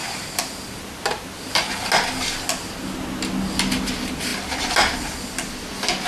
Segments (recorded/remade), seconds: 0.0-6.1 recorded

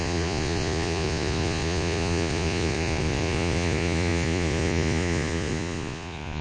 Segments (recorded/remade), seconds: 0.0-6.4 remade

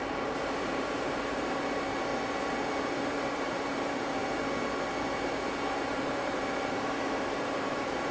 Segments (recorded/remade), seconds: 0.0-2.1 remade; 2.1-2.8 recorded; 2.8-4.2 remade; 4.2-5.9 recorded; 5.9-8.1 remade

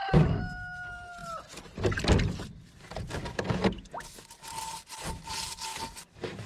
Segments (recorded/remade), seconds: 0.0-6.5 recorded

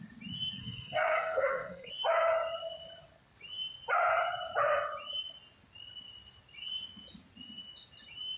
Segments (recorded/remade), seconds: 0.0-0.6 recorded; 0.6-1.9 remade; 1.9-8.4 recorded

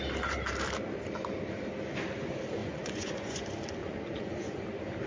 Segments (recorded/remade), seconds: 0.0-2.6 recorded; 2.6-3.4 remade; 3.4-3.8 recorded; 3.8-4.6 remade; 4.6-5.1 recorded

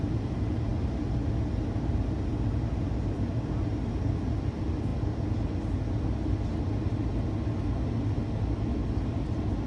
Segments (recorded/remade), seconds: 0.0-9.7 recorded